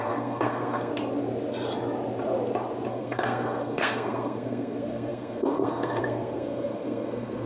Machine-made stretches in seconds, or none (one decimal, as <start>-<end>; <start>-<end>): 0.0-0.9; 2.9-7.5